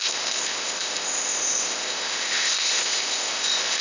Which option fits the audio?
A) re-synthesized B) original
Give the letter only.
A